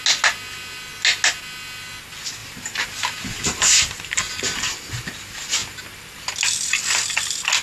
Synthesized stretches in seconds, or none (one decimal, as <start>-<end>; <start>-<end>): 2.4-3.6